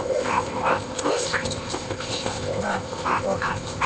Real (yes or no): no